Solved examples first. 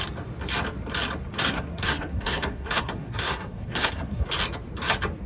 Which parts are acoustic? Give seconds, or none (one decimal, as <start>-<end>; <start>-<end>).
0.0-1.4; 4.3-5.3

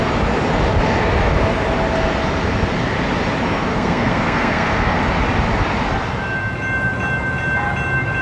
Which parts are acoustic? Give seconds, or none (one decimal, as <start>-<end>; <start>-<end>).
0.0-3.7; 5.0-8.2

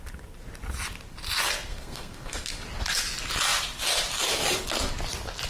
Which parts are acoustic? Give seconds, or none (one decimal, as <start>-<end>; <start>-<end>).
0.0-1.7; 2.5-5.5